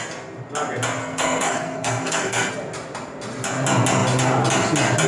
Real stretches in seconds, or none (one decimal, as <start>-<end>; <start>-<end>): 0.0-1.0; 2.5-5.1